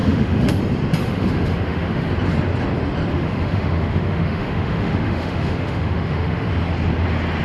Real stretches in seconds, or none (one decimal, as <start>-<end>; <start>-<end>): 0.6-1.0; 2.1-3.1; 6.5-7.4